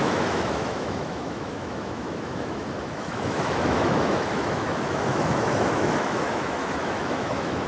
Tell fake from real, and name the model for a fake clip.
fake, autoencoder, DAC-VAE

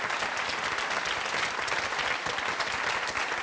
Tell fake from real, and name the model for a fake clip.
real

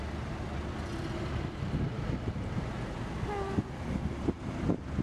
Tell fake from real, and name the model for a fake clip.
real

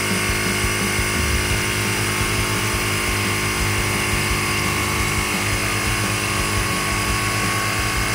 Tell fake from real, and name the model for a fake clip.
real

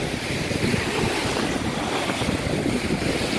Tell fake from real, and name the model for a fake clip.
real